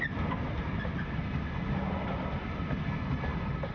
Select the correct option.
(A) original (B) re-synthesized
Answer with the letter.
A